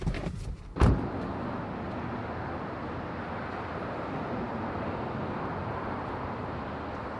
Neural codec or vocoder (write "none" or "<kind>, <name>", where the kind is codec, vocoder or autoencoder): none